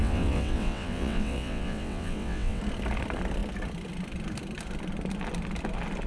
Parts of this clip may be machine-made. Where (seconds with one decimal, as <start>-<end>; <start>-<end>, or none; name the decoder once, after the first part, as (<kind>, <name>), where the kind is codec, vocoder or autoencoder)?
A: 0.0-2.6 (vocoder, WaveNeXt)